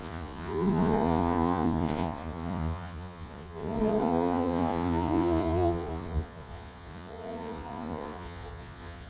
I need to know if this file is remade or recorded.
remade